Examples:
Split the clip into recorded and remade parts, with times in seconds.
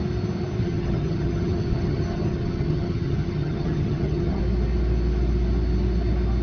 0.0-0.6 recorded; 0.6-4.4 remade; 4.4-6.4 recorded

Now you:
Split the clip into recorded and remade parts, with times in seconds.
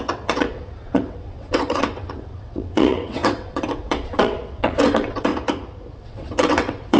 0.0-5.3 remade; 5.3-5.9 recorded; 5.9-7.0 remade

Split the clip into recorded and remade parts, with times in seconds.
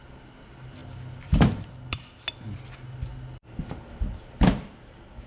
0.0-5.3 recorded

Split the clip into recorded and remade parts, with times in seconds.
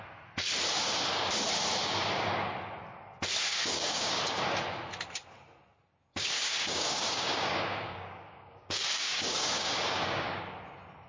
0.0-3.5 recorded; 3.5-4.2 remade; 4.2-6.1 recorded; 6.1-10.4 remade; 10.4-11.1 recorded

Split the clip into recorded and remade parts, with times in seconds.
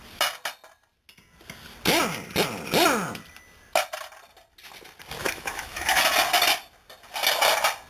0.0-5.2 recorded; 5.2-6.0 remade; 6.0-7.9 recorded